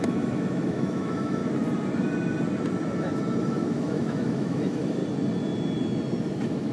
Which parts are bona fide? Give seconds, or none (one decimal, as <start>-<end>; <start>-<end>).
1.4-3.4; 5.0-6.2